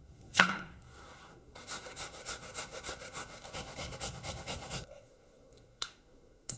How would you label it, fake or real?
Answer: fake